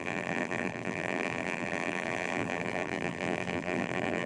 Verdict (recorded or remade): remade